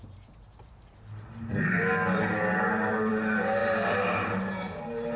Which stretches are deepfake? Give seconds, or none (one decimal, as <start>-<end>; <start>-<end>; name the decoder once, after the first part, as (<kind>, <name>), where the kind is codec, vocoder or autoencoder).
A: none